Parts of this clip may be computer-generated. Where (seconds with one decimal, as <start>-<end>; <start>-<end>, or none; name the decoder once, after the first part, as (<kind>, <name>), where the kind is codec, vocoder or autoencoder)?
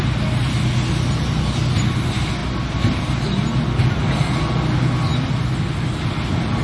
none